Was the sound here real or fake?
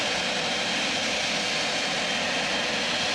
real